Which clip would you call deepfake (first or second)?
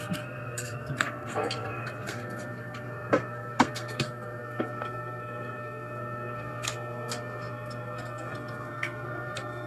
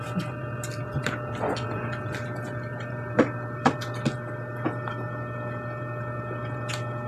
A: first